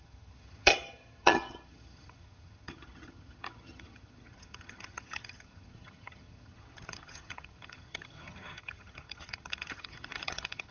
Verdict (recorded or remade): remade